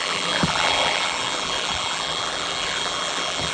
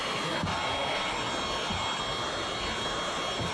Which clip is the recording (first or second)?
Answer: second